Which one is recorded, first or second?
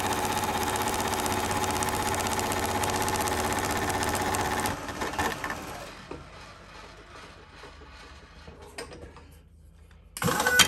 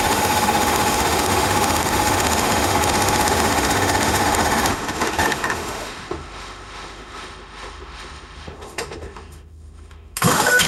first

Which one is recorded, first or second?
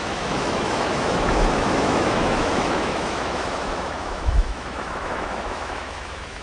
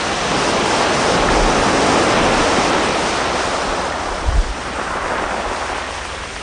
second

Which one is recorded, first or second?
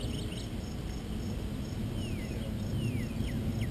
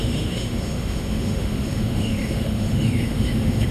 first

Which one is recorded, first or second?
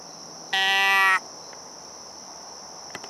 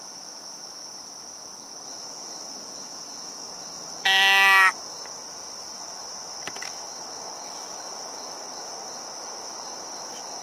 first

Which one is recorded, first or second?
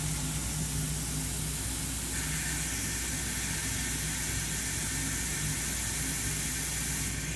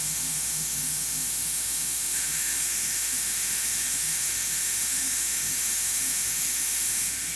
first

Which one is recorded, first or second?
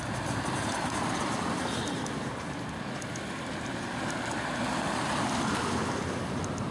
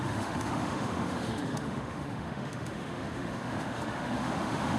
first